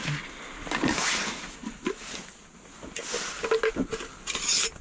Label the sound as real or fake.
real